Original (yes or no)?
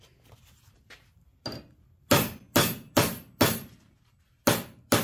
yes